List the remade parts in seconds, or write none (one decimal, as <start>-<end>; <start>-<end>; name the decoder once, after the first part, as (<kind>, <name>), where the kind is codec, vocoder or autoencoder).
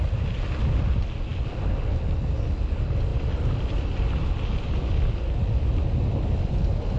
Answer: 3.1-5.8 (vocoder, BigVGAN v2)